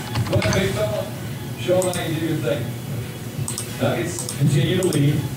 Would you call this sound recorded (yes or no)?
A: no